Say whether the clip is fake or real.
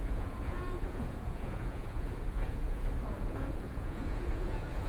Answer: fake